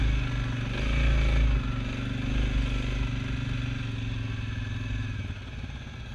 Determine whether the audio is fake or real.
real